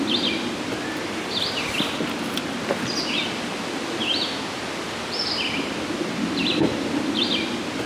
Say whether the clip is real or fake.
real